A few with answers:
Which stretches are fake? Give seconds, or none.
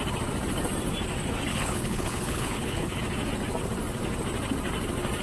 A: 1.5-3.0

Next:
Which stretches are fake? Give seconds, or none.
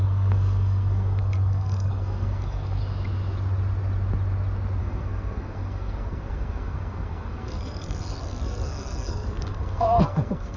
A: 0.0-2.8; 4.8-10.6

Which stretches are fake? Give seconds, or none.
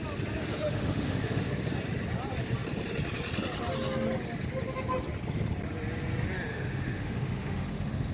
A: 0.4-1.5; 6.5-8.1